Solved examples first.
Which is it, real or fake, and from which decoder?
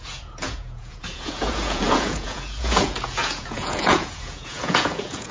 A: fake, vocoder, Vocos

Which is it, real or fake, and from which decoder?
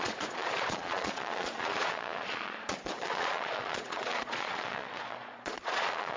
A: fake, vocoder, Vocos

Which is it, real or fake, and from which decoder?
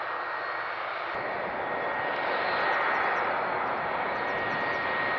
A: real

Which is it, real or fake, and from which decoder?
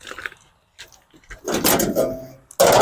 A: real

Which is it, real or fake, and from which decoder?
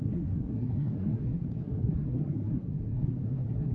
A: fake, codec, SNAC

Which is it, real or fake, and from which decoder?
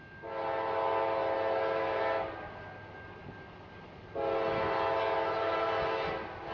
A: real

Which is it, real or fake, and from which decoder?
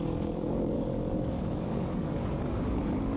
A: fake, codec, DAC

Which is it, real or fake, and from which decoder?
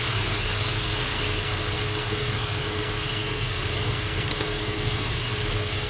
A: fake, codec, SNAC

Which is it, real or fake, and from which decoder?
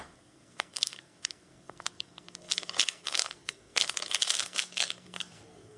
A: fake, codec, SNAC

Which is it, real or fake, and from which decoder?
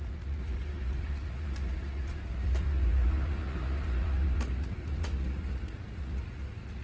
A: fake, vocoder, Vocos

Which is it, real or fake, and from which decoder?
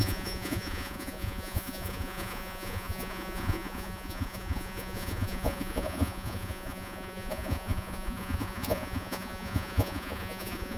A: fake, vocoder, Vocos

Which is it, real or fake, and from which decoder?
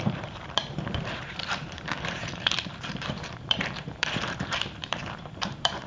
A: fake, vocoder, BigVGAN v2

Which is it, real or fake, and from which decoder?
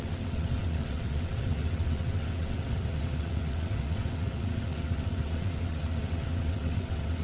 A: fake, vocoder, WaveNeXt